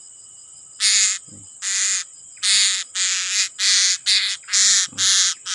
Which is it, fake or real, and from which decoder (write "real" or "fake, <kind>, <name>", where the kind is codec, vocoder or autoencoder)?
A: real